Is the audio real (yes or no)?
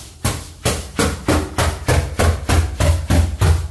yes